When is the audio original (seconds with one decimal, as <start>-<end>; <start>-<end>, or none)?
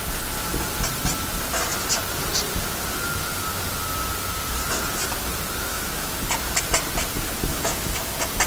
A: 0.0-5.7; 6.2-7.5; 8.1-8.5